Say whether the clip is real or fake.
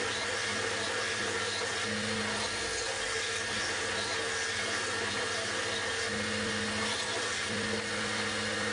real